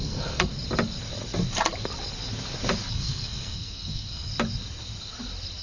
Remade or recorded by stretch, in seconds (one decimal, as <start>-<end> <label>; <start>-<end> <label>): 0.0-0.5 remade; 0.5-2.9 recorded; 2.9-4.3 remade; 4.3-5.6 recorded